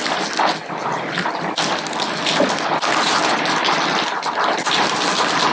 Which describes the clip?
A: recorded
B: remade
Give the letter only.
A